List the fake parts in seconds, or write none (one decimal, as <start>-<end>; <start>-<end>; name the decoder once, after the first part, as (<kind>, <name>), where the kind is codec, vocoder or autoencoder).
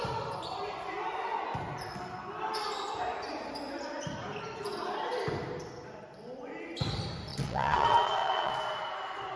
7.3-8.5 (vocoder, WaveNeXt)